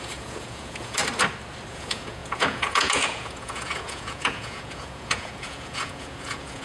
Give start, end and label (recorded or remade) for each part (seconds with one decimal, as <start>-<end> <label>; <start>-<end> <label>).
0.0-1.0 remade; 1.0-1.7 recorded; 1.7-6.6 remade